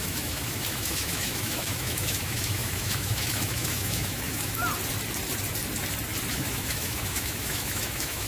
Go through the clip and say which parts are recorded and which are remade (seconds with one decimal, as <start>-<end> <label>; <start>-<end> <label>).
0.0-4.6 remade; 4.6-6.3 recorded; 6.3-8.3 remade